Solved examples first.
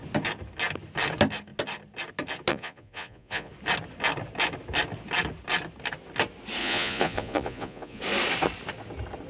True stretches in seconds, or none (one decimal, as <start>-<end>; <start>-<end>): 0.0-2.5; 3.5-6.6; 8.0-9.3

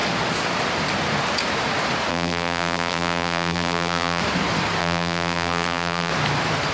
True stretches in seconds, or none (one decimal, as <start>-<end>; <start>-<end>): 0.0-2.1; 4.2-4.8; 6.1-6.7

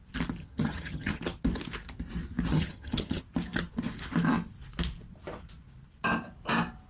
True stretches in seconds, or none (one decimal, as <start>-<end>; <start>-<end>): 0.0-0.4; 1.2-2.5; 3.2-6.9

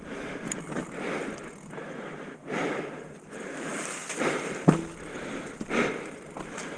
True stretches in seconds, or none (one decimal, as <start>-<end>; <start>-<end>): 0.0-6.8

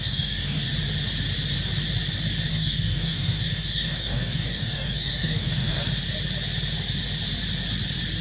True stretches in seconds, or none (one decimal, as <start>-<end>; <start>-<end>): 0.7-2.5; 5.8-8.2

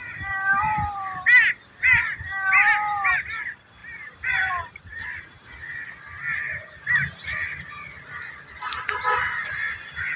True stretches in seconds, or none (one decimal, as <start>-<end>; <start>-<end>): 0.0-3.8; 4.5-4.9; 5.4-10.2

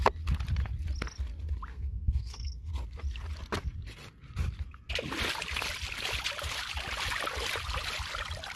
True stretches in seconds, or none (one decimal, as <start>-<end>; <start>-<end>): 0.0-1.7; 2.7-8.6

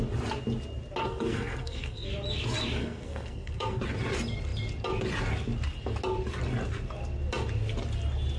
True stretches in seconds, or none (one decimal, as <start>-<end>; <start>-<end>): 0.0-1.0; 2.1-2.8; 3.8-8.4